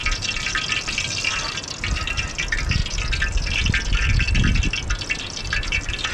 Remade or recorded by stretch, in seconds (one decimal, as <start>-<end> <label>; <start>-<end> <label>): 0.0-2.3 recorded; 2.3-2.8 remade; 2.8-5.2 recorded; 5.2-6.1 remade